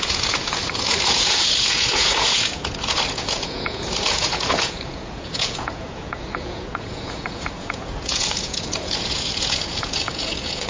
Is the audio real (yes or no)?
no